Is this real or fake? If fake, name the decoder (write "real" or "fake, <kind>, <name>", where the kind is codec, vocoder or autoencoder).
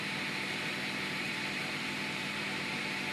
fake, vocoder, BigVGAN v2